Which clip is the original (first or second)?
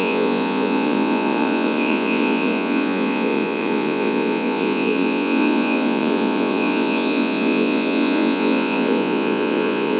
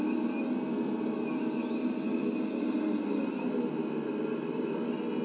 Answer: second